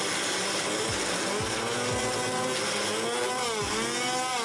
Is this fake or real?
real